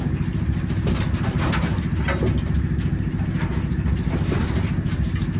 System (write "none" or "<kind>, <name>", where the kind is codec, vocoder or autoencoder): none